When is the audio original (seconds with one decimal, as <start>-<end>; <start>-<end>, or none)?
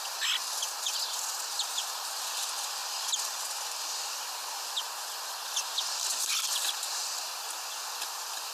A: 0.0-2.8; 4.7-8.5